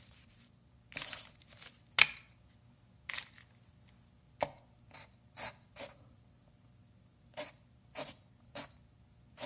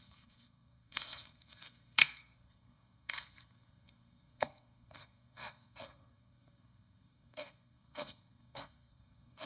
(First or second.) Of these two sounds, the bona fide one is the first